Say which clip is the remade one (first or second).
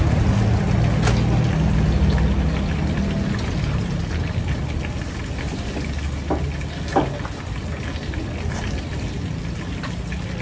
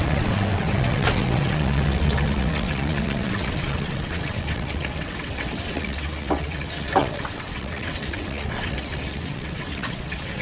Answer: second